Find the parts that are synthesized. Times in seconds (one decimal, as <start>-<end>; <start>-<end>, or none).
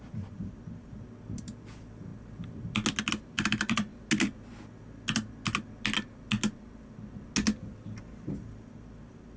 0.0-2.1; 3.1-3.9; 8.5-9.4